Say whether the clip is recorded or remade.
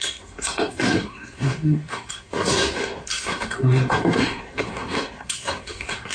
remade